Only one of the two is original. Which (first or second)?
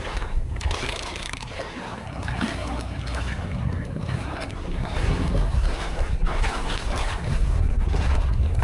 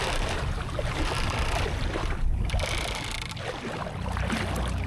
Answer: second